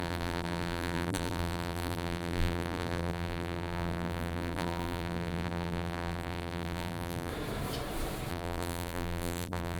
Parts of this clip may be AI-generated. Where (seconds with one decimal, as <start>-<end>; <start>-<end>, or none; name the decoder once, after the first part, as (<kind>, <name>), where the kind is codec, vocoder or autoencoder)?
0.0-7.3 (vocoder, BigVGAN v2); 8.3-9.8